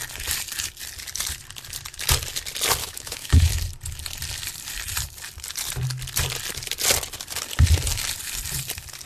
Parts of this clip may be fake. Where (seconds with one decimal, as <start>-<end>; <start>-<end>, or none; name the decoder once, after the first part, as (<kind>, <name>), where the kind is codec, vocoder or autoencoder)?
2.8-3.5 (autoencoder, DAC-VAE)